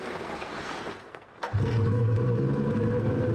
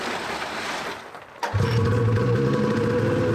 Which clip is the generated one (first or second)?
first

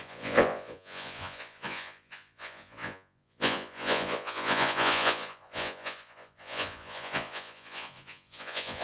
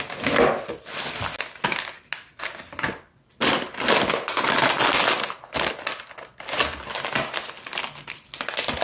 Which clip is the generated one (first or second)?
first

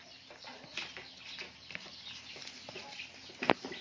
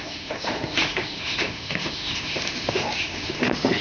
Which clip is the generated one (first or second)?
second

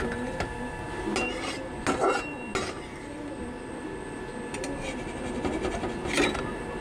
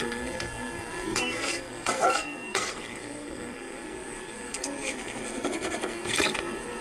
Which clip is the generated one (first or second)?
second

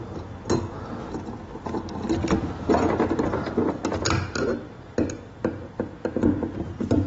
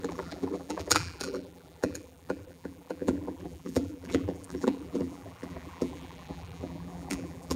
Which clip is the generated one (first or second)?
second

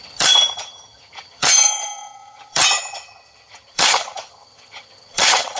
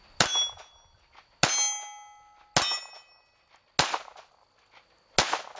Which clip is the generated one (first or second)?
first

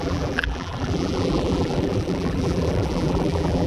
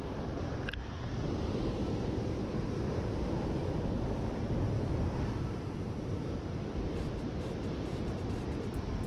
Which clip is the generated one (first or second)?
first